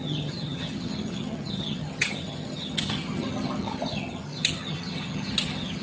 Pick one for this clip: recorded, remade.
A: remade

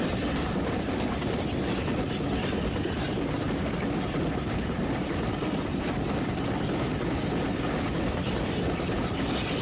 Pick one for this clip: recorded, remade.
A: recorded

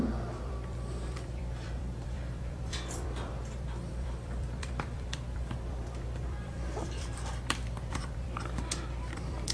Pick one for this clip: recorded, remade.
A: remade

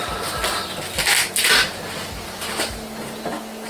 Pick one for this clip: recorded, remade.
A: recorded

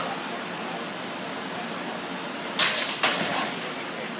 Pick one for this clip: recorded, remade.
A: recorded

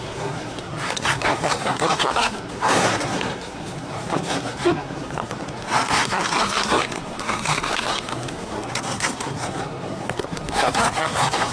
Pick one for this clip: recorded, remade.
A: remade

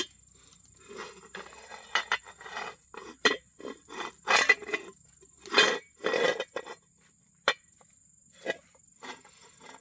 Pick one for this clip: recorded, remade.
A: recorded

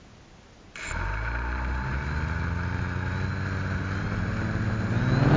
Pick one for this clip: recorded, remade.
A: recorded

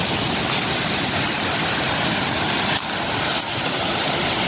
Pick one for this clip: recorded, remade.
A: recorded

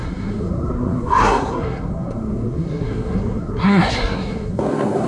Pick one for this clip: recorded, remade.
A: remade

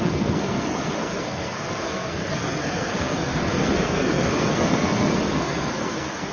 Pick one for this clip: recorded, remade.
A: remade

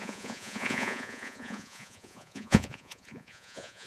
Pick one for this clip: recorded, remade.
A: remade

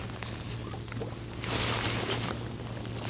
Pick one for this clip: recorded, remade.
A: recorded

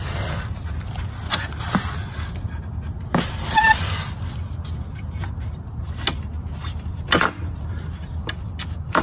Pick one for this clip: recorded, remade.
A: recorded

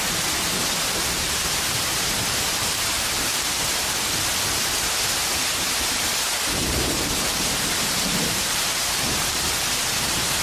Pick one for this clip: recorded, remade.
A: remade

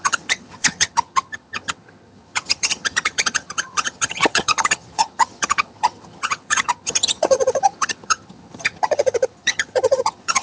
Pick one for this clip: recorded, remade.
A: remade